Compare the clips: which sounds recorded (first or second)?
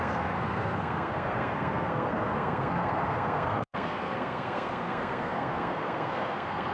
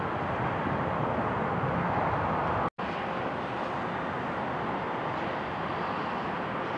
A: second